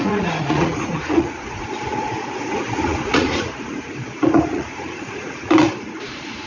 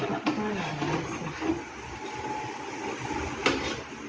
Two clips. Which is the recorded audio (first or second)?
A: second